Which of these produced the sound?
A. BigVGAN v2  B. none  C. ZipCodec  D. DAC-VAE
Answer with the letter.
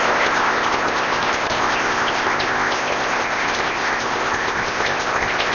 C